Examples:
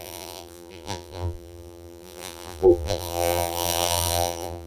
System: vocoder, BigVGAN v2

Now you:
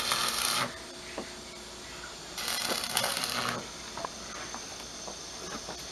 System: vocoder, BigVGAN v2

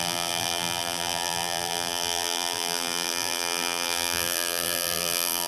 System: vocoder, BigVGAN v2